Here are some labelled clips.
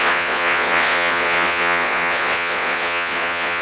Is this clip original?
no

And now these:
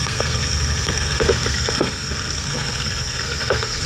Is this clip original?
no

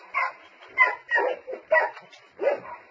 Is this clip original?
no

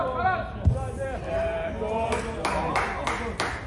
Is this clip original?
yes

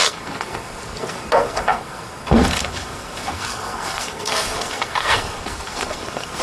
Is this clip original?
no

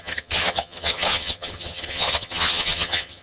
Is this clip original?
no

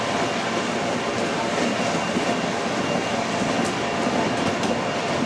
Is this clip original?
yes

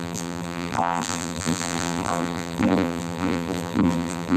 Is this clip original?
no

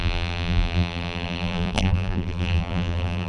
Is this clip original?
no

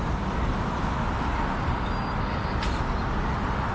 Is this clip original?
yes